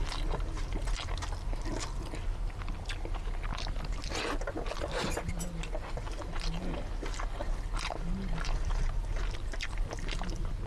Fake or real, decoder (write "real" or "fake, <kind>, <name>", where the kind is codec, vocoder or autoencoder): real